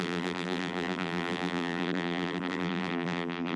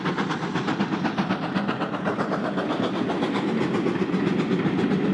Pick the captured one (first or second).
second